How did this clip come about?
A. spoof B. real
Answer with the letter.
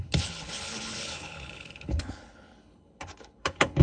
A